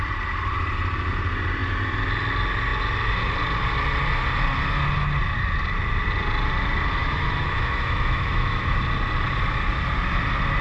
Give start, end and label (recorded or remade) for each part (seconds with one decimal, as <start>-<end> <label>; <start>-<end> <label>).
0.0-7.0 recorded; 7.0-8.7 remade; 8.7-10.6 recorded